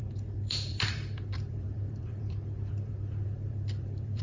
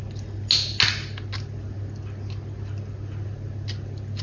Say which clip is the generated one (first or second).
first